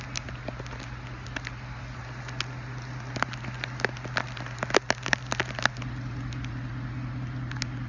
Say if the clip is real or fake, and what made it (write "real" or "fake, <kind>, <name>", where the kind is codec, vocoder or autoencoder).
real